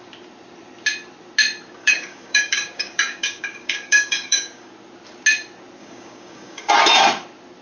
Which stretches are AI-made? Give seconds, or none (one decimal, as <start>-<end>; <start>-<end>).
1.8-4.7; 5.8-6.7